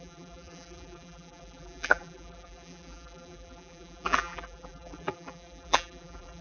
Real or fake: fake